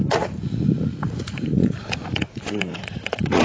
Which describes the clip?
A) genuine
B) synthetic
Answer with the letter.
B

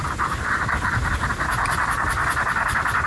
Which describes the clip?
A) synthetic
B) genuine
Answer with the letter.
B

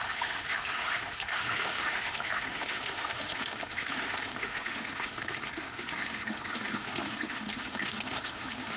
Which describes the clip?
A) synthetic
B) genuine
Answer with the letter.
A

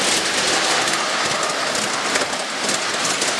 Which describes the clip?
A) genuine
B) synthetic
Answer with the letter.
A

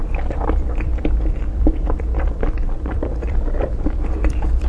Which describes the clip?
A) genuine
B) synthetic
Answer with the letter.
B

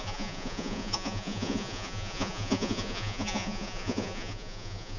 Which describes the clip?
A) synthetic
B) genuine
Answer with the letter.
A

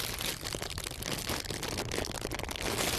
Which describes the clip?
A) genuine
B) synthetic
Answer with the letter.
A